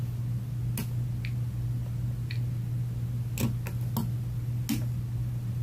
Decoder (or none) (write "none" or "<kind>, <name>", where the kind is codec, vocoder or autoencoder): none